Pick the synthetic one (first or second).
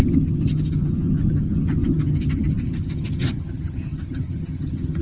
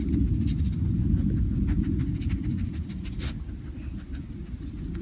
first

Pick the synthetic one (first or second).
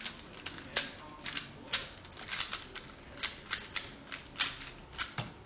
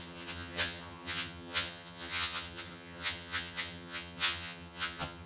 second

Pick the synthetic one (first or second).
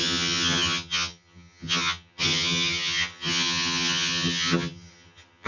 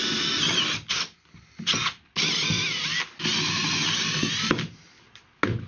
first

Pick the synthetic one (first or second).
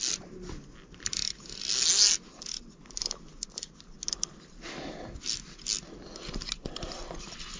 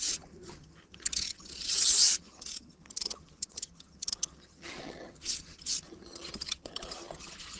second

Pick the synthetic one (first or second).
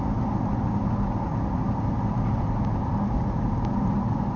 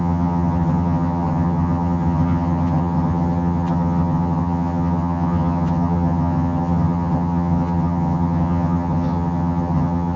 second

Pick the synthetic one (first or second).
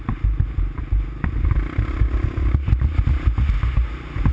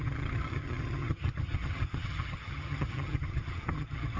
second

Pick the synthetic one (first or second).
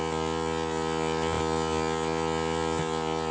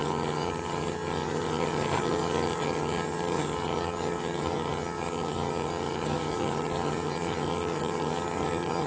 second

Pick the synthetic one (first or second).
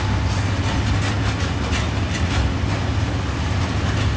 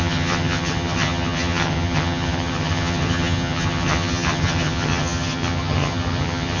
second